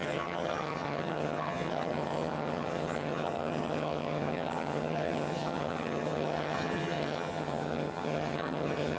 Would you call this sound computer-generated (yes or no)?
yes